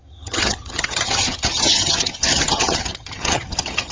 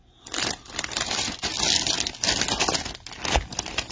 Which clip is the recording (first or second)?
second